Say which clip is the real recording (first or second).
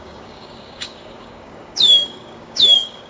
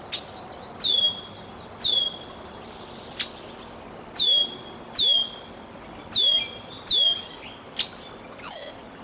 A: second